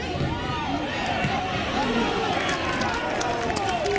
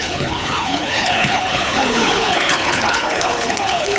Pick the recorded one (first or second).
first